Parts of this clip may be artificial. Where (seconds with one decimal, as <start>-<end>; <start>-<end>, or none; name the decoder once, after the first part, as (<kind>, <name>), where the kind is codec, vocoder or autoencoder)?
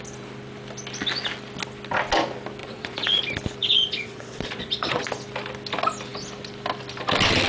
2.6-3.2 (vocoder, Vocos); 3.6-5.1